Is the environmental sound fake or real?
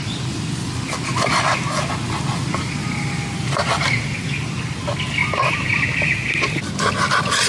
real